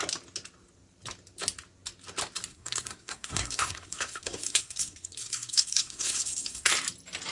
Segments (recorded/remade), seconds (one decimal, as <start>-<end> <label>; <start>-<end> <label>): 0.0-2.5 recorded; 2.5-6.7 remade; 6.7-7.3 recorded

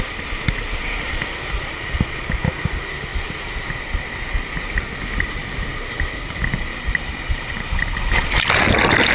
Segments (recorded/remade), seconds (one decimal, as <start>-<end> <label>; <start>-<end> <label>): 0.0-6.7 recorded; 6.7-7.8 remade; 7.8-9.1 recorded

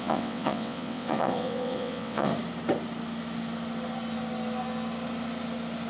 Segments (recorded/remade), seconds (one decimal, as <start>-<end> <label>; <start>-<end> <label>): 0.0-2.3 remade; 2.3-5.9 recorded

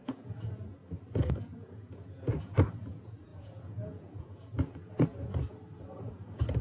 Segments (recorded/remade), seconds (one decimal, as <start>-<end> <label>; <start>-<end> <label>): 0.0-0.8 remade; 0.8-1.4 recorded; 1.4-5.3 remade; 5.3-6.1 recorded; 6.1-6.6 remade

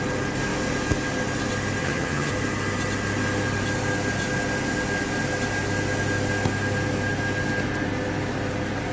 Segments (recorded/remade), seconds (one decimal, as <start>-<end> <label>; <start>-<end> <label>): 0.0-1.8 recorded; 1.8-2.3 remade; 2.3-8.9 recorded

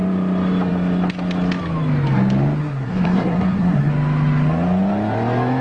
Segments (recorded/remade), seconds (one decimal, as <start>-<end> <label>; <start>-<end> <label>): 0.0-2.6 recorded; 2.6-3.9 remade; 3.9-5.6 recorded

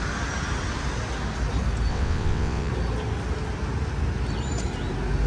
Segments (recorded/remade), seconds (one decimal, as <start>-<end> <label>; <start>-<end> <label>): 0.0-1.9 recorded; 1.9-2.7 remade; 2.7-5.3 recorded

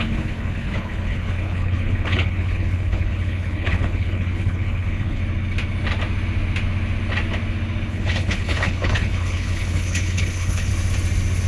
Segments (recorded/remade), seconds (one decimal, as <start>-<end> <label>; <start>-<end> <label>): 0.0-5.2 remade; 5.2-7.9 recorded; 7.9-10.7 remade; 10.7-11.5 recorded